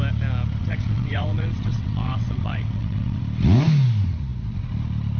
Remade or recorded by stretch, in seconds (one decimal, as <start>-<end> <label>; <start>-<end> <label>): 0.0-0.6 recorded; 0.6-3.2 remade; 3.2-5.2 recorded